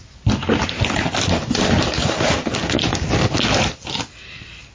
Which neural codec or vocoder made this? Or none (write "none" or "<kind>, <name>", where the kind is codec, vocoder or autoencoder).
none